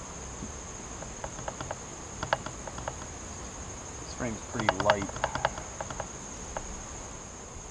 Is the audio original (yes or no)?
yes